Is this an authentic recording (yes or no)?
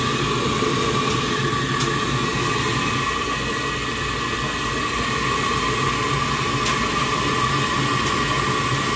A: yes